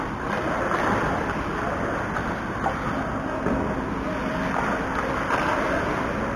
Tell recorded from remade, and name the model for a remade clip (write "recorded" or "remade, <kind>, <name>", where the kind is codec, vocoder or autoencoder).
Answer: recorded